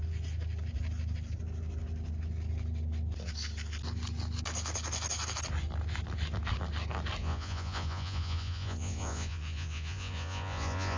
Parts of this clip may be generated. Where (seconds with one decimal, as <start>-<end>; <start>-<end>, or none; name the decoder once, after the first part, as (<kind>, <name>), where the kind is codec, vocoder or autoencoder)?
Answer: 7.2-11.0 (vocoder, Vocos)